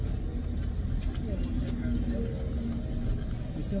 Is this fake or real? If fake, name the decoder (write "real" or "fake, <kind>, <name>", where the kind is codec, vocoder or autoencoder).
real